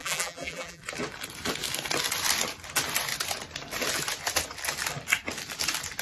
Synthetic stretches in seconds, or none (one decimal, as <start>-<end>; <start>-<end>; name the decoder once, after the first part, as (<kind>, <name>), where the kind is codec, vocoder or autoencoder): 0.0-0.8 (vocoder, BigVGAN v2)